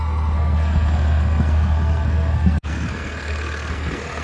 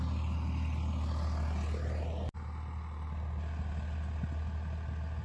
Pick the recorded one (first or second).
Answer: second